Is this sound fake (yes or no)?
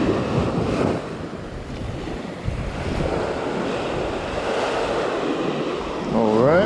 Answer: no